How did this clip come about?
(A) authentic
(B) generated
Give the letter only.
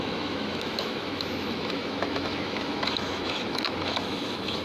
B